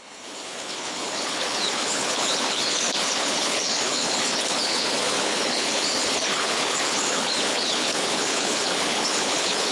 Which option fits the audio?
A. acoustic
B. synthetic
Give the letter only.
B